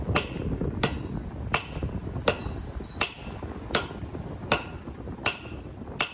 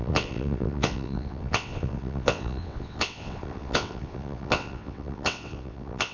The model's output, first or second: second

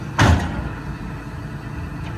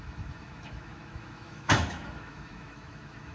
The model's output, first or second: second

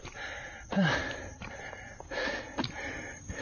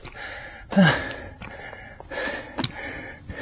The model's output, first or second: first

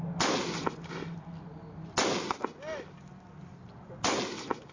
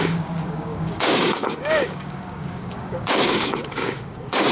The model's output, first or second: second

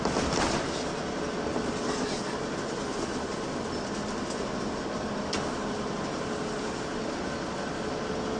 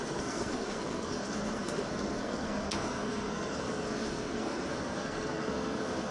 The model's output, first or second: second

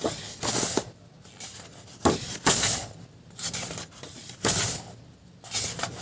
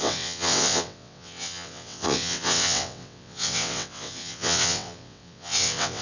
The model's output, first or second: second